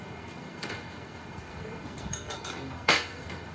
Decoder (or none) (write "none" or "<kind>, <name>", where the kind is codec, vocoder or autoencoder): codec, SNAC